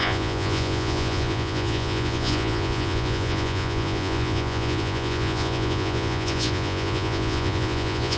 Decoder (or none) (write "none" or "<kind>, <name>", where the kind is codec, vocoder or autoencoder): vocoder, Vocos